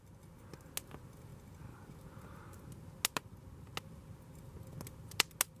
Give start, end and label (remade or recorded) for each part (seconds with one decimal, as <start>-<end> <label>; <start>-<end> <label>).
0.0-5.6 recorded